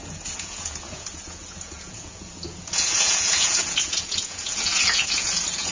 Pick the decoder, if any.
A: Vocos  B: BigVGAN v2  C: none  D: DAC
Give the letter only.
A